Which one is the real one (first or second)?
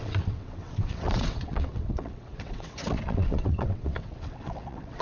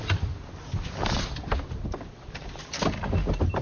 second